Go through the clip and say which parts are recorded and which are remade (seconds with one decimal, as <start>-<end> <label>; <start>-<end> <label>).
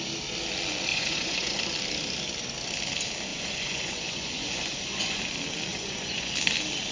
0.0-0.9 recorded; 0.9-1.6 remade; 1.6-3.3 recorded; 3.3-5.2 remade; 5.2-5.7 recorded; 5.7-6.3 remade; 6.3-6.9 recorded